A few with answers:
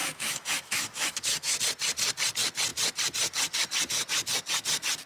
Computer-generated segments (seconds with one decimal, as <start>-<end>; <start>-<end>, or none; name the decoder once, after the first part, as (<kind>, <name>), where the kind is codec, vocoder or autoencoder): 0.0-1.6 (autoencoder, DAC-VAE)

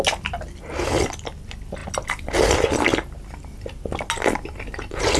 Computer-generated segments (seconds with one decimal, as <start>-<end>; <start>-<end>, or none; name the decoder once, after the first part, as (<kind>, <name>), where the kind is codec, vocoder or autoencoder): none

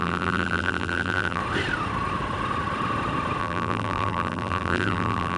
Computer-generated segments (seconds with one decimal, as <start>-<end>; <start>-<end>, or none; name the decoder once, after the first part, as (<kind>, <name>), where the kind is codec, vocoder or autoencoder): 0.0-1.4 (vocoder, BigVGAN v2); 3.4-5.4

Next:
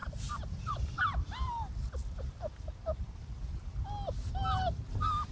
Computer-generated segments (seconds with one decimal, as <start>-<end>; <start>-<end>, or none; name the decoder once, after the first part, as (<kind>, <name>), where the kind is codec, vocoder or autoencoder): none

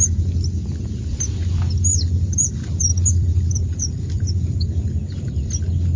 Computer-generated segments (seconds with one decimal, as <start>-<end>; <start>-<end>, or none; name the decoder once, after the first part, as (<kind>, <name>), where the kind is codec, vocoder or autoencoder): 1.9-5.5 (vocoder, BigVGAN v2)

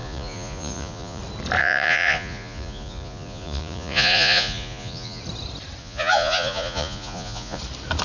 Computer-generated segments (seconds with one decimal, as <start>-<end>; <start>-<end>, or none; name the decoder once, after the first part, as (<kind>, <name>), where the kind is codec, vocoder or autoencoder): 0.0-1.2 (vocoder, Vocos); 1.6-5.2; 5.8-7.6